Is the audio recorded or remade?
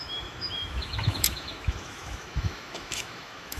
remade